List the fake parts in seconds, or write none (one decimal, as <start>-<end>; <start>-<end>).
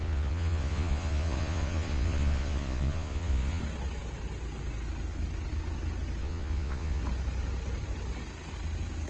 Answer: 0.0-3.6; 6.2-7.0